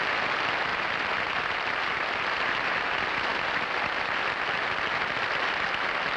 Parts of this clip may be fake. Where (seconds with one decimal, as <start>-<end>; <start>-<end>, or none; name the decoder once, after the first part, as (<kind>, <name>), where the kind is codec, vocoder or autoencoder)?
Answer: 0.7-2.4 (vocoder, BigVGAN v2)